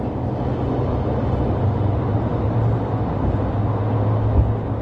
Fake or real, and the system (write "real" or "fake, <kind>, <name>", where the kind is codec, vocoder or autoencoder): real